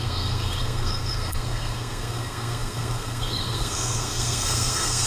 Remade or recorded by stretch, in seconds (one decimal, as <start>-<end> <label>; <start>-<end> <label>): 0.0-5.1 remade